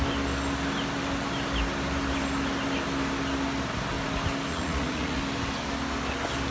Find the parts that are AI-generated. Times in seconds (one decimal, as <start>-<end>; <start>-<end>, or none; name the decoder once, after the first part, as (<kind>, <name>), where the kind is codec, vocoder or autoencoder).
4.5-5.2 (vocoder, Vocos)